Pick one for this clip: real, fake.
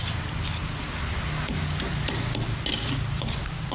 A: real